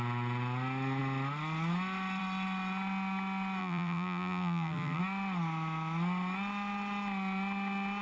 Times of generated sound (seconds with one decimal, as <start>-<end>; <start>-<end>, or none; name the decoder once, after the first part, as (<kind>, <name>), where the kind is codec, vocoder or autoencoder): 3.6-5.0 (vocoder, BigVGAN v2)